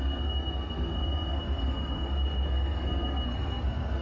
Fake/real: fake